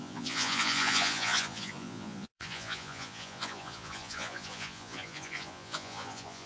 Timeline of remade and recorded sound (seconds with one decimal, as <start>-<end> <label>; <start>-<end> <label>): 0.0-6.5 remade